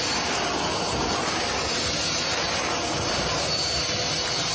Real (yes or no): yes